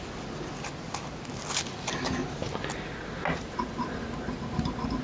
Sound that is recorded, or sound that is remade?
recorded